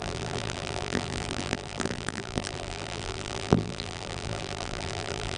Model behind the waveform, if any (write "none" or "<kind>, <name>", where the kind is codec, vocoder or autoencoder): vocoder, BigVGAN v2